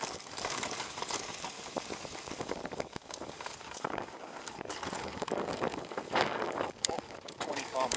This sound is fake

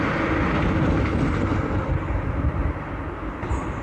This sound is real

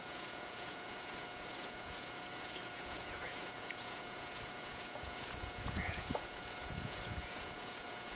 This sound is fake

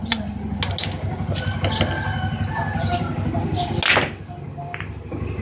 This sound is real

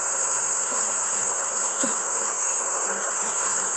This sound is fake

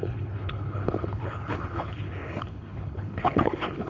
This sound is fake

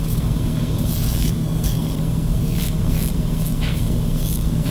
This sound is fake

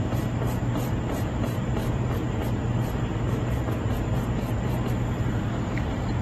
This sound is fake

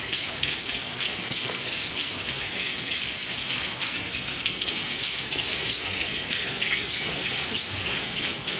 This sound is fake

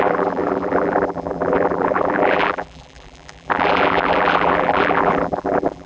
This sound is fake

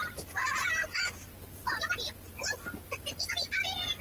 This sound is real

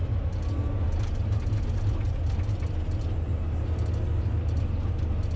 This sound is real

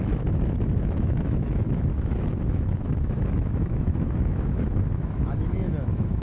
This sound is fake